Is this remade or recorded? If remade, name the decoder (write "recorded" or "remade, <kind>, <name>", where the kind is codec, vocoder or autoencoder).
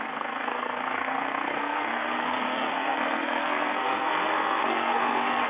remade, codec, SNAC